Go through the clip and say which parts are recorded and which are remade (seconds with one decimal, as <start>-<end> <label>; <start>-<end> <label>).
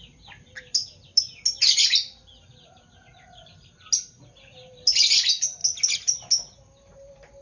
0.0-7.4 recorded